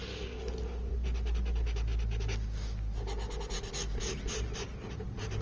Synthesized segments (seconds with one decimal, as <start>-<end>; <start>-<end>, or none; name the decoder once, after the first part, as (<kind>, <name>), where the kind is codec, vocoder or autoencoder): none